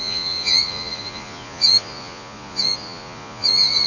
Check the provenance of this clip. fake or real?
fake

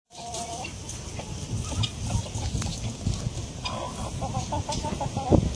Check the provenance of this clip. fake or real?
real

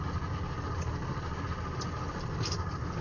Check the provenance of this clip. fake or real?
real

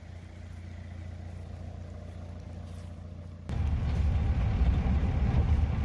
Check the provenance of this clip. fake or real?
real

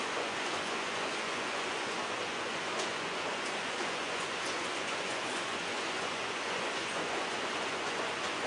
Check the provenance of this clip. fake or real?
fake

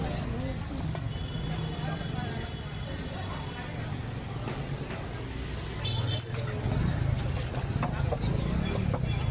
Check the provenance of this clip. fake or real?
real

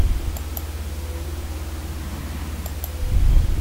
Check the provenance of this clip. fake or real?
real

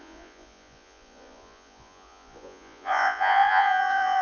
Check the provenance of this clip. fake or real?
fake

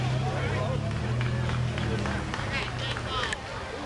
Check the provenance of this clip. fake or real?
real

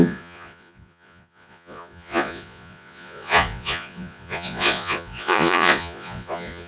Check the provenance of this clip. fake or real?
fake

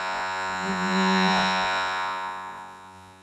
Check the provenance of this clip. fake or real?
fake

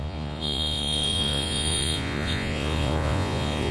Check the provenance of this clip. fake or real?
fake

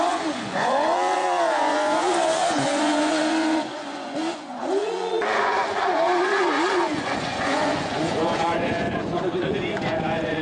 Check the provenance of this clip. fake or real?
fake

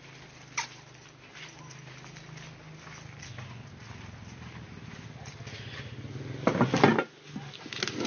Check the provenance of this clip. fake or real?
real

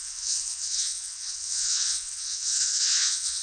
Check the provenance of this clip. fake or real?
fake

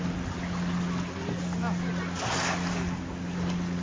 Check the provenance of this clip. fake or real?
real